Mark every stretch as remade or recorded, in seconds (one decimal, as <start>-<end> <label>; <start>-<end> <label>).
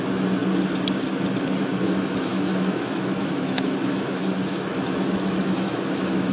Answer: 0.0-0.4 remade; 0.4-1.6 recorded; 1.6-6.3 remade